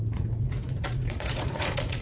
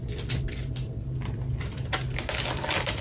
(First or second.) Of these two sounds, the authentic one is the second